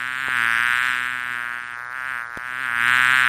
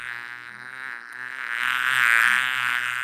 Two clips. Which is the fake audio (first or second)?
second